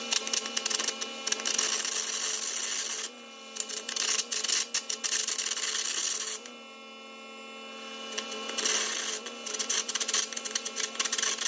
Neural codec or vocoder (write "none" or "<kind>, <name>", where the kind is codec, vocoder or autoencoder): none